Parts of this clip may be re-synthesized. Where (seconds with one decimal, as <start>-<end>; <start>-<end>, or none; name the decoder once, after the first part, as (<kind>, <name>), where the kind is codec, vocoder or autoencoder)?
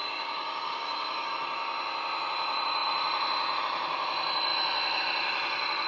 0.0-1.3 (codec, DAC)